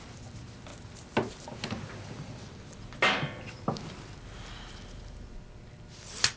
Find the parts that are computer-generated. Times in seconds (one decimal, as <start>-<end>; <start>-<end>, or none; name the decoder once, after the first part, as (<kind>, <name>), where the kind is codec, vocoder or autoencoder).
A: none